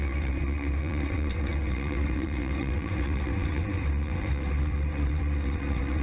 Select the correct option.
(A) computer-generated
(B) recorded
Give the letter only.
A